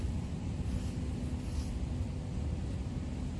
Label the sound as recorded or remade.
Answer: recorded